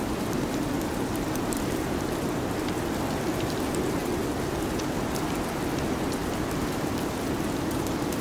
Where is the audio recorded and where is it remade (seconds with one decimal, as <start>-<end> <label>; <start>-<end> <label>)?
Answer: 0.0-6.2 recorded; 6.2-7.5 remade; 7.5-8.2 recorded